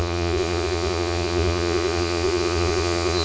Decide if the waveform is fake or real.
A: fake